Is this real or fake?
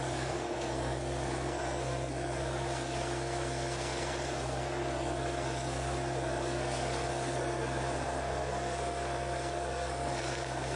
fake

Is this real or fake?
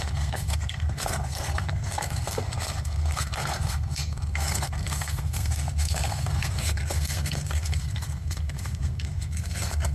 fake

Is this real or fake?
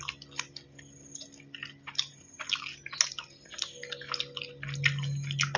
real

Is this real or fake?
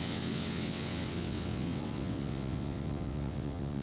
fake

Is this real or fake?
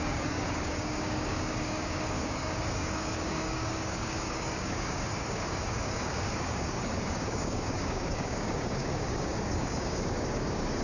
fake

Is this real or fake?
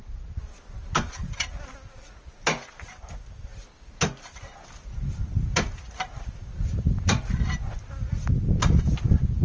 real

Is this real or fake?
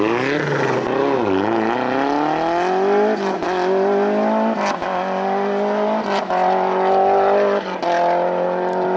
real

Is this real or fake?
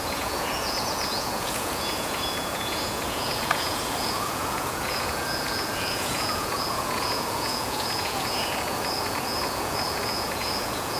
fake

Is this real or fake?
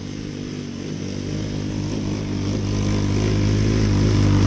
real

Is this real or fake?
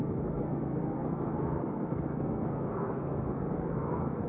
fake